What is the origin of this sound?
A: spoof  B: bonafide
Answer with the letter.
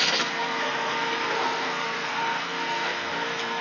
A